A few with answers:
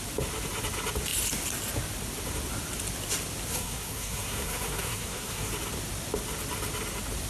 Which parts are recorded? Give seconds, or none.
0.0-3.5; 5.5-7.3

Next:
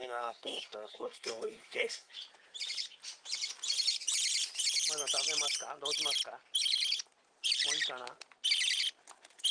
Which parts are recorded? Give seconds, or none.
2.1-9.5

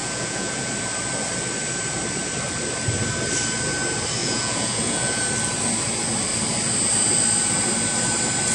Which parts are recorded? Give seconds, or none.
0.7-4.2; 5.2-8.5

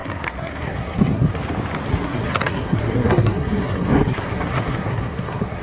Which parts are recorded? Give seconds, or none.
1.4-1.9

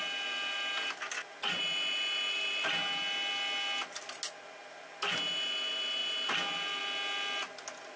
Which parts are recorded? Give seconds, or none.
0.0-8.0